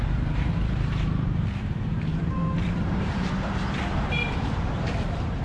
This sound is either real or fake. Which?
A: fake